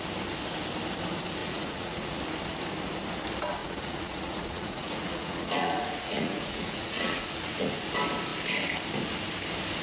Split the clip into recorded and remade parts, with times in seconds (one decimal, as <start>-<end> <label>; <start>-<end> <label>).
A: 0.0-1.4 recorded; 1.4-2.2 remade; 2.2-3.6 recorded; 3.6-7.7 remade; 7.7-9.8 recorded